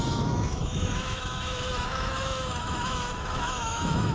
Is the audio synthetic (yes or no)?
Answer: yes